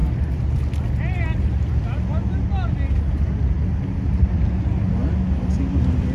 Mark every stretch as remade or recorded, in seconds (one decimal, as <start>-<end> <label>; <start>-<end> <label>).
0.0-6.1 recorded